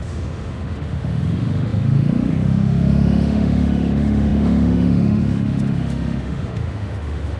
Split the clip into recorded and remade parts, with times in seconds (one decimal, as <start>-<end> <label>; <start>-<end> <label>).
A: 0.0-7.4 remade